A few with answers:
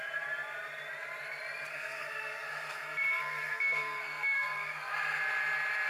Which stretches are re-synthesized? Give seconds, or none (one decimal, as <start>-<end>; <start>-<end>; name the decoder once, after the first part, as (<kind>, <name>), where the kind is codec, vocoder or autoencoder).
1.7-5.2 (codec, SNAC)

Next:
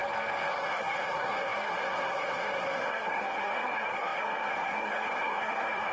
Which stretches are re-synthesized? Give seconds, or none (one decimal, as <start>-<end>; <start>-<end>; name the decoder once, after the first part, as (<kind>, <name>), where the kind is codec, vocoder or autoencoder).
0.5-5.9 (codec, SNAC)

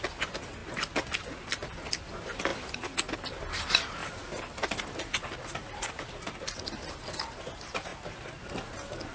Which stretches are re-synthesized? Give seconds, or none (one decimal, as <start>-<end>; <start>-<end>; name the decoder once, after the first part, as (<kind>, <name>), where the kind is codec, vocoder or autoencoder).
none

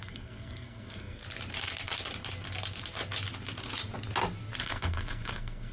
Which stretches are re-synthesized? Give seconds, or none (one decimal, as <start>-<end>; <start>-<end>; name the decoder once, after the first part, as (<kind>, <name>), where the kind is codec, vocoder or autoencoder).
0.0-1.2 (codec, SNAC); 4.6-5.7